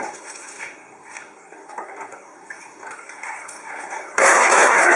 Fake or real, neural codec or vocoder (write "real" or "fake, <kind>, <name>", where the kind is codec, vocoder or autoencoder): fake, codec, SNAC